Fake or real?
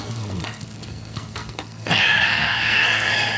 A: fake